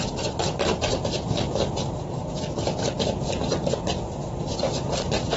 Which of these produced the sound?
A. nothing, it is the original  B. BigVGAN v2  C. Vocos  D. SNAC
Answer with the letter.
B